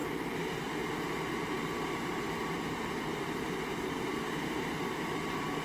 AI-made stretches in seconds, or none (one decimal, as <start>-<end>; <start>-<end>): 0.0-5.6